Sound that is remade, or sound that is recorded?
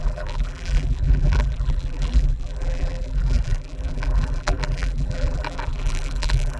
remade